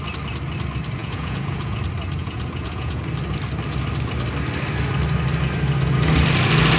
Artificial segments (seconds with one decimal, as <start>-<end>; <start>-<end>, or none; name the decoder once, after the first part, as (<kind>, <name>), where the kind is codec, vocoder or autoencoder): 1.0-1.8 (vocoder, Vocos); 2.2-3.0